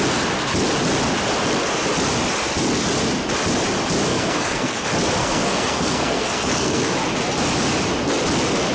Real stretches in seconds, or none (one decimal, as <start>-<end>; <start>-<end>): 0.0-4.1; 4.8-5.2; 6.9-8.7